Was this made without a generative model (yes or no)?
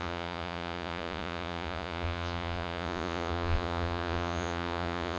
no